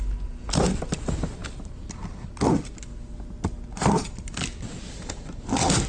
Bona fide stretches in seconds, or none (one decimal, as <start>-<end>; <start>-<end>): 0.0-5.9